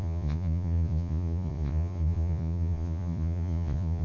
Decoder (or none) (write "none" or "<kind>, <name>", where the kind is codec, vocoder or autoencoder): vocoder, Vocos